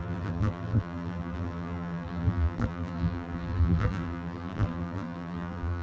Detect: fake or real fake